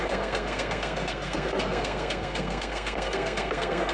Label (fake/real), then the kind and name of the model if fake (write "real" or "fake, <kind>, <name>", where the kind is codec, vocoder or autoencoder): fake, codec, SNAC